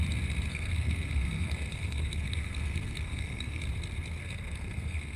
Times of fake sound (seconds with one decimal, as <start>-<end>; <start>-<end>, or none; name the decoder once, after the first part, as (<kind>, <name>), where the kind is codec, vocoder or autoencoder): 0.5-3.6 (codec, SNAC); 4.2-5.2